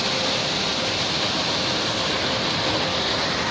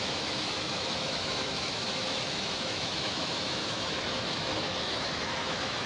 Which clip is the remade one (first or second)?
second